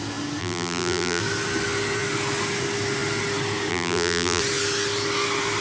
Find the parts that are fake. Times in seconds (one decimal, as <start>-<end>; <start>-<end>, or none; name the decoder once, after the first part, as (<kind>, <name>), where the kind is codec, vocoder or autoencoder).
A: 0.4-1.2 (vocoder, BigVGAN v2); 3.7-4.4